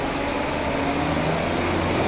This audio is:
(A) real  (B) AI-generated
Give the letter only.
A